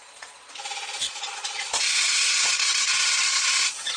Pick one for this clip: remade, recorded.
remade